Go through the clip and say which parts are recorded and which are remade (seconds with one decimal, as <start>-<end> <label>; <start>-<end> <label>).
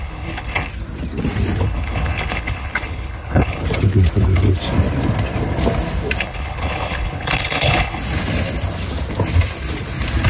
0.0-0.7 remade; 0.7-1.6 recorded; 1.6-3.6 remade; 3.6-6.2 recorded; 6.2-8.0 remade; 8.0-10.3 recorded